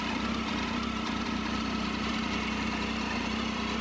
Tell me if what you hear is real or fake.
real